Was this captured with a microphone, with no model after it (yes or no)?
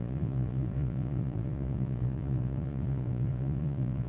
no